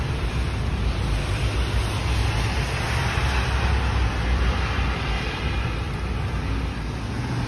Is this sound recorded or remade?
recorded